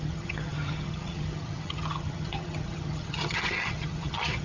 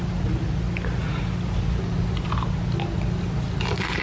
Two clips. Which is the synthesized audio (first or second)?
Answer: first